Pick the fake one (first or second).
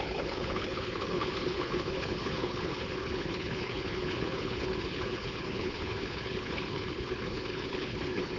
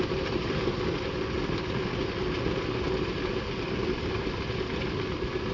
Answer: first